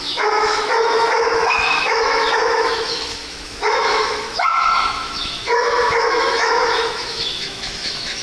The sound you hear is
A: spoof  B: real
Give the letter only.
A